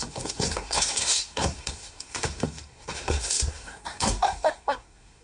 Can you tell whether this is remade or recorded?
remade